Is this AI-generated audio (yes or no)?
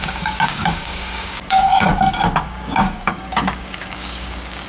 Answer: yes